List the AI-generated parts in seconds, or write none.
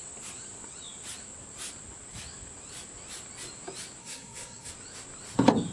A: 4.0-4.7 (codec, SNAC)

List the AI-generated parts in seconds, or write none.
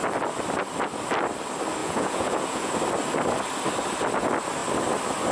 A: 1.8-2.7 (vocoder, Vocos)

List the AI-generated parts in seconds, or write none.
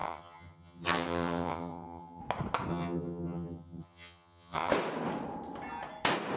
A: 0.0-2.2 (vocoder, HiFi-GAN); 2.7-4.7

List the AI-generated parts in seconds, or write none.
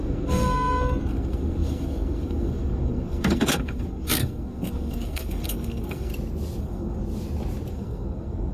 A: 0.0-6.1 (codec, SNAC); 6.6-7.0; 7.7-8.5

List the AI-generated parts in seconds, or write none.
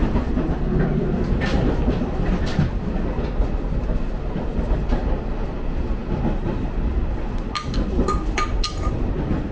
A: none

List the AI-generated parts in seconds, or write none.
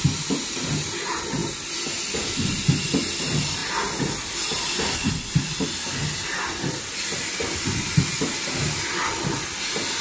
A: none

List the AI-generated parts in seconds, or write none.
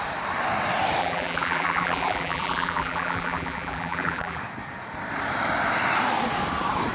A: 1.0-4.4 (vocoder, BigVGAN v2)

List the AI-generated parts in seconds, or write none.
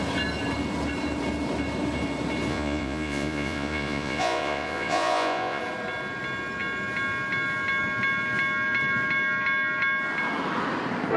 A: 2.5-5.6 (vocoder, Vocos)